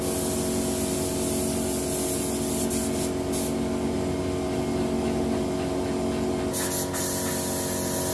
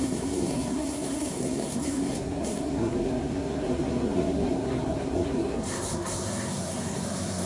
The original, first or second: first